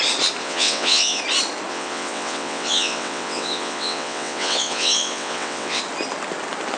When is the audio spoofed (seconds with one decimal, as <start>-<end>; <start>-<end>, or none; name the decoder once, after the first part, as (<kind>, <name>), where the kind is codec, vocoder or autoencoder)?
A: 0.4-1.2 (vocoder, WaveNeXt); 1.7-5.8